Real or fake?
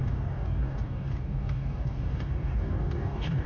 fake